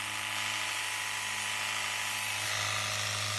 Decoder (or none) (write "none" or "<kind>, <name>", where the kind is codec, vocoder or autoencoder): none